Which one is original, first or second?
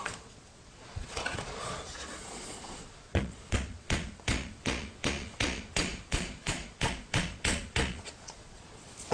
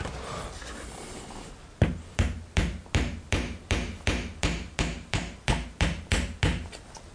second